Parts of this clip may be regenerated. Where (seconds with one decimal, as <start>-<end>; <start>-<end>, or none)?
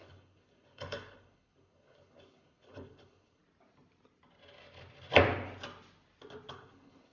0.0-3.4; 6.5-7.1